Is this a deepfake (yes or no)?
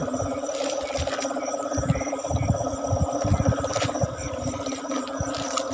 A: yes